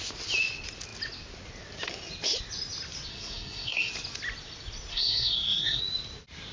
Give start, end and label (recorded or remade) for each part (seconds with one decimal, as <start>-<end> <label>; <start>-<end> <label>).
0.0-3.1 recorded; 3.1-3.9 remade; 3.9-4.9 recorded; 4.9-5.8 remade; 5.8-6.5 recorded